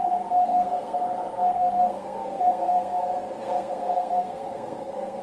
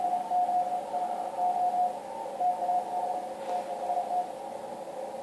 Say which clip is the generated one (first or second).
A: first